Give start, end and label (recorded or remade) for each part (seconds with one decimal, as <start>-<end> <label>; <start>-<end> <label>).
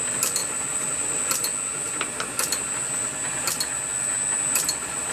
0.0-0.4 recorded; 0.4-1.2 remade; 1.2-5.1 recorded